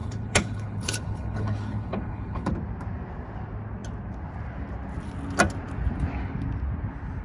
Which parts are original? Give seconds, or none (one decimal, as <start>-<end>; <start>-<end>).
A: 2.5-7.2